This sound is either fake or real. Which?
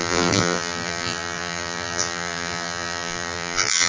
fake